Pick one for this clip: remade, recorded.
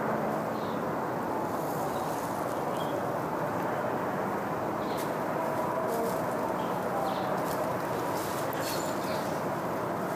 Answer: recorded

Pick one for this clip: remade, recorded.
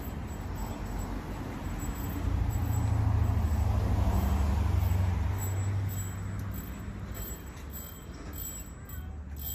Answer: recorded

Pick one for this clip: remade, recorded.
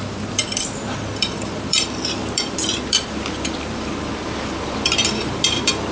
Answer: remade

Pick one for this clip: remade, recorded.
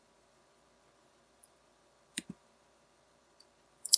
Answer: remade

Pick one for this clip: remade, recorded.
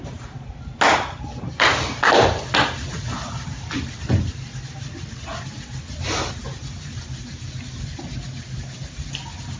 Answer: recorded